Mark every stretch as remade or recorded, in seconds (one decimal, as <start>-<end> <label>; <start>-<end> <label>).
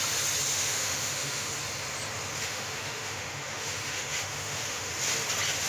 0.0-0.5 recorded; 0.5-1.5 remade; 1.5-2.4 recorded; 2.4-4.9 remade; 4.9-5.7 recorded